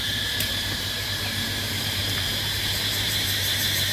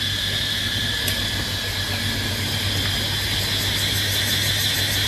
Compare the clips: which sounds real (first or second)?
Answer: second